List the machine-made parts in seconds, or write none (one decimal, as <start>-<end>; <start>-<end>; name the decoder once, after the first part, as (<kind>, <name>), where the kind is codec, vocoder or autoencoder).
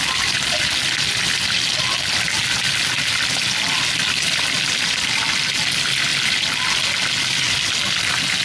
none